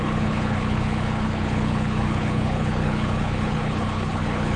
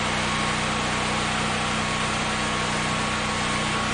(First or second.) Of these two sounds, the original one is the second